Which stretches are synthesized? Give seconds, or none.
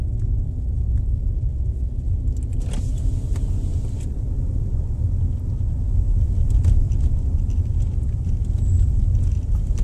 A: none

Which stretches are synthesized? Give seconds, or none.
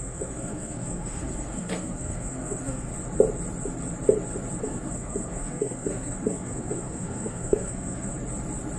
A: 0.0-2.9 (codec, SNAC); 4.6-8.1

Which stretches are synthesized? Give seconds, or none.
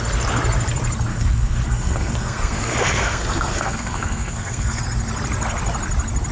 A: 1.1-4.8 (codec, SNAC)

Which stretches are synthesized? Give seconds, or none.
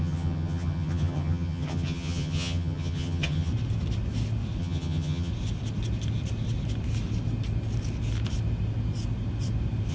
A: 0.0-3.5 (vocoder, HiFi-GAN); 4.6-5.3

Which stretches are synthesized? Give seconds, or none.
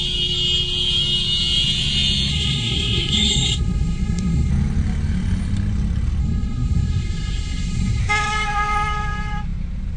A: 2.3-4.5 (codec, SNAC); 6.2-8.0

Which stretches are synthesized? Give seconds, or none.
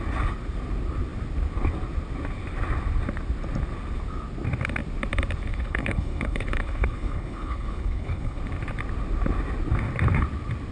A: 5.5-8.4 (codec, HILCodec)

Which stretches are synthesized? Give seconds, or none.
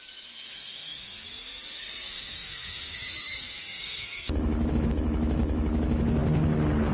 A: 0.0-6.2 (autoencoder, DAC-VAE)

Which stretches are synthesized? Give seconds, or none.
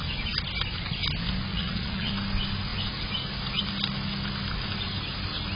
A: 1.5-2.1 (vocoder, Vocos)